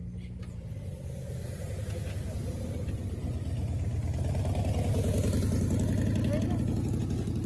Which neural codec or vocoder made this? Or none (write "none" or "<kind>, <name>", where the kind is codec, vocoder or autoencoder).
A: none